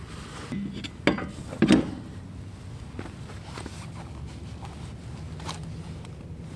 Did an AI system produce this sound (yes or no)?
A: no